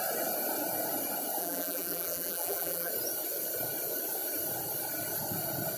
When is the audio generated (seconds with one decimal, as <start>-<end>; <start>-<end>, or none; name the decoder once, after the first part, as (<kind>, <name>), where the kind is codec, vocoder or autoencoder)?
1.4-2.9 (vocoder, BigVGAN v2)